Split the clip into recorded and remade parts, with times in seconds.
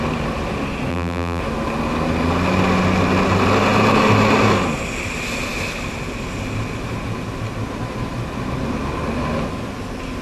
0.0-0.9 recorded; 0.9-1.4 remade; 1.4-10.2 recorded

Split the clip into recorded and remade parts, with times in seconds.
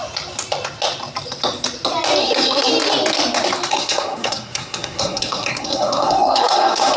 0.0-2.2 recorded; 2.2-2.7 remade; 2.7-3.7 recorded; 3.7-7.0 remade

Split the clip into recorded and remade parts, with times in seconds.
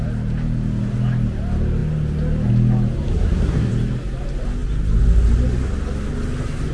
0.0-3.1 recorded; 3.1-3.7 remade; 3.7-6.7 recorded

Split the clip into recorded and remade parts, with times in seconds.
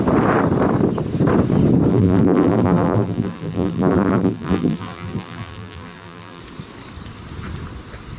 0.0-1.9 recorded; 1.9-6.4 remade; 6.4-8.2 recorded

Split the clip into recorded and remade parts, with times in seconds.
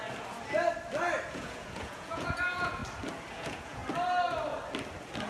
0.0-1.3 recorded; 1.3-2.8 remade; 2.8-3.3 recorded; 3.3-3.8 remade; 3.8-5.3 recorded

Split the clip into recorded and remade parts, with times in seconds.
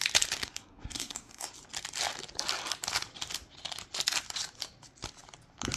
0.0-0.4 recorded; 0.4-1.5 remade; 1.5-5.8 recorded